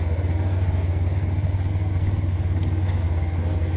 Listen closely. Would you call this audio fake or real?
fake